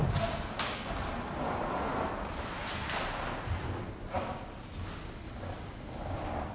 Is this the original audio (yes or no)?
yes